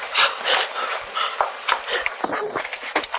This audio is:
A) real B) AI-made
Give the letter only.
A